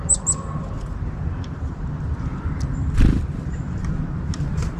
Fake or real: real